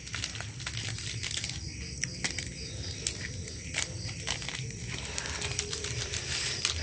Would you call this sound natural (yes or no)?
yes